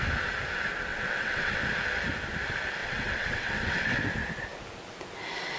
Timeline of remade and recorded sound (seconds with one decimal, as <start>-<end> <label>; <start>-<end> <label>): 0.0-0.9 recorded; 0.9-1.6 remade; 1.6-2.8 recorded; 2.8-4.0 remade; 4.0-5.6 recorded